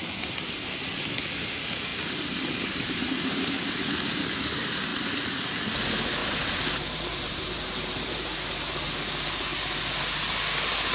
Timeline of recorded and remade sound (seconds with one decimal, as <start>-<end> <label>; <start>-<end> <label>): 0.0-1.9 recorded; 1.9-3.1 remade; 3.1-4.9 recorded; 4.9-5.6 remade; 5.6-6.2 recorded; 6.2-8.2 remade; 8.2-10.9 recorded